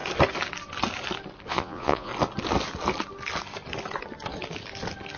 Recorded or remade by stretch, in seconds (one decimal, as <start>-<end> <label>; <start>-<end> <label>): 0.0-1.5 recorded; 1.5-2.1 remade; 2.1-5.2 recorded